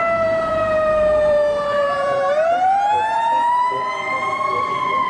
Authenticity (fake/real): fake